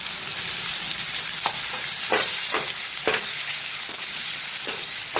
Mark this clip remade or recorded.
recorded